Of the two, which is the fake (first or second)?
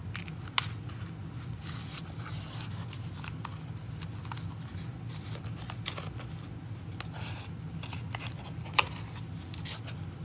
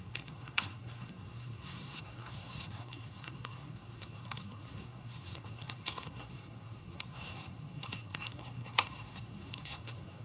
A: second